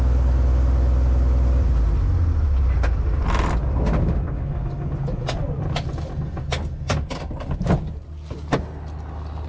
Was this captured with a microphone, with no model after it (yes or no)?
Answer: yes